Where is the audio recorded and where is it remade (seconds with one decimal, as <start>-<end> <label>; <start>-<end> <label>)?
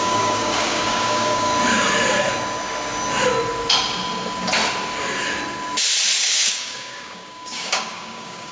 0.0-1.5 remade; 1.5-6.2 recorded; 6.2-8.5 remade